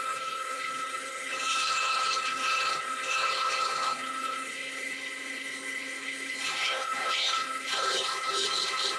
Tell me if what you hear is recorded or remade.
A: remade